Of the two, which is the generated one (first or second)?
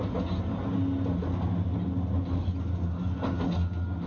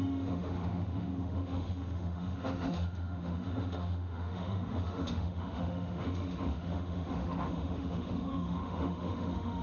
second